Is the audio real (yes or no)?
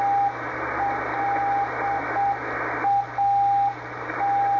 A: yes